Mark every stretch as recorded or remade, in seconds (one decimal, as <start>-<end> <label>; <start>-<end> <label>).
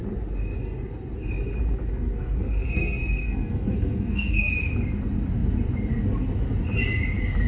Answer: 0.0-1.9 recorded; 1.9-4.5 remade; 4.5-7.5 recorded